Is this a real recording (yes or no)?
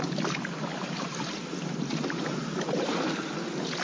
yes